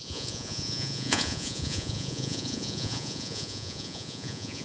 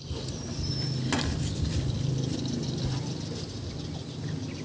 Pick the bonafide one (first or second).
second